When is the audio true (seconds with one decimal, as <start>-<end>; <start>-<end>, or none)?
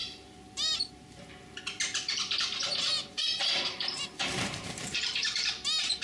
1.6-3.0; 5.5-6.0